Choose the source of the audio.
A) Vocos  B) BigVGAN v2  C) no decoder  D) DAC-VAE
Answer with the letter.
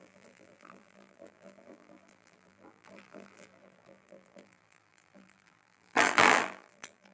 B